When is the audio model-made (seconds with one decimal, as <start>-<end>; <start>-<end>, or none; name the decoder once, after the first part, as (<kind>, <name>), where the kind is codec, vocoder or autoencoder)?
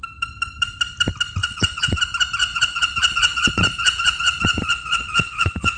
1.4-2.0 (vocoder, WaveNeXt); 2.4-5.8